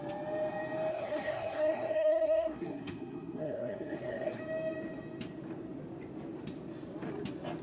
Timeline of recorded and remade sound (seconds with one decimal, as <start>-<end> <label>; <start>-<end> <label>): 0.0-0.9 recorded; 0.9-4.4 remade; 4.4-7.6 recorded